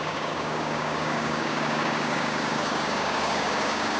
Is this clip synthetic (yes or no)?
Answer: yes